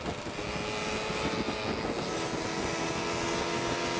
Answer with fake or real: real